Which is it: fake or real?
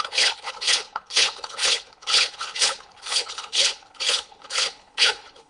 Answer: fake